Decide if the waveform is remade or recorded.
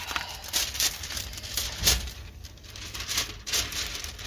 recorded